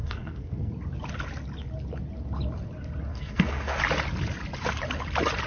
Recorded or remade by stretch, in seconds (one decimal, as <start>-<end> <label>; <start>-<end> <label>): 0.0-0.7 remade; 0.7-3.1 recorded; 3.1-3.8 remade; 3.8-5.5 recorded